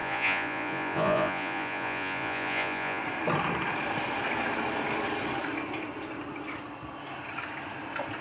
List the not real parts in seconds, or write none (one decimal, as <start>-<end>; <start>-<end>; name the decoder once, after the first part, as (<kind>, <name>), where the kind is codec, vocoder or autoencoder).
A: 0.0-3.0 (vocoder, Vocos)